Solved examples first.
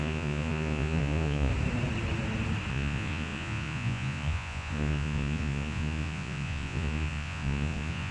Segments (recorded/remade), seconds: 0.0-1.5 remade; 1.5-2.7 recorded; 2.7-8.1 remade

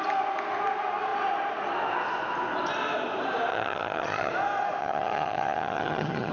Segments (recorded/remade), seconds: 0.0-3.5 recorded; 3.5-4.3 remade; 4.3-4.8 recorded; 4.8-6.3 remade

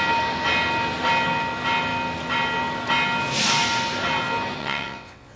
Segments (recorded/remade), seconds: 0.0-4.6 recorded; 4.6-5.4 remade

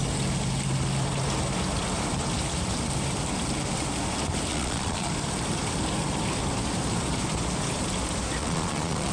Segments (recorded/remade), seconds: 0.0-4.5 recorded; 4.5-5.1 remade; 5.1-8.4 recorded; 8.4-9.1 remade